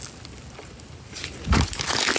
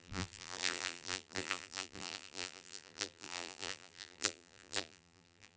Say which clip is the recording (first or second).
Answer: first